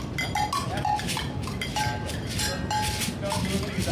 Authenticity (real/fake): real